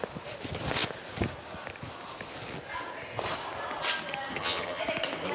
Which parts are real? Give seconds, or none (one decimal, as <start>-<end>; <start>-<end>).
0.0-4.3; 4.8-5.3